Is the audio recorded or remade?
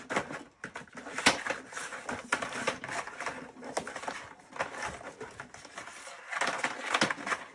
recorded